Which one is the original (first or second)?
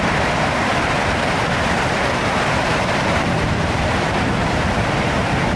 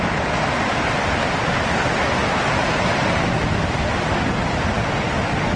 second